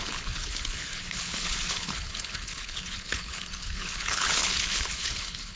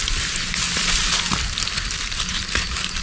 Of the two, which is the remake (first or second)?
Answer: first